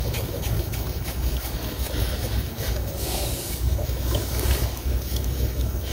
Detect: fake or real fake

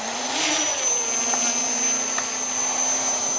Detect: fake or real real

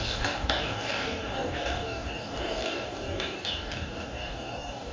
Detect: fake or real fake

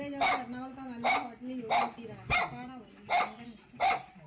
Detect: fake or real real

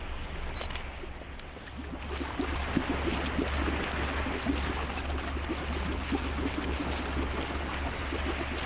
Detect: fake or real real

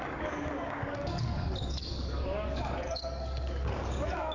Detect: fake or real fake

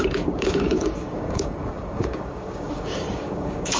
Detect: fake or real fake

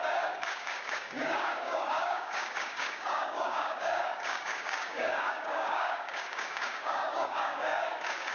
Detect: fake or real fake